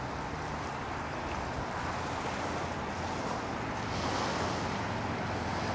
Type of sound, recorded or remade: recorded